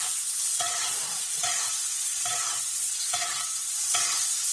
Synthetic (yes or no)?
yes